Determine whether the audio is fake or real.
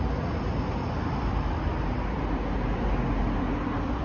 real